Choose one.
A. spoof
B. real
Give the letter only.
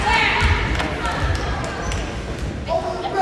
B